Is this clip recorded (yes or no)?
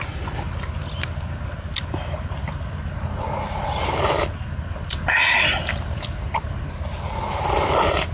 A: yes